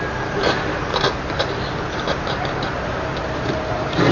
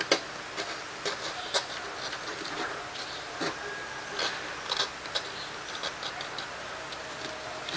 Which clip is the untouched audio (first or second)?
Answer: second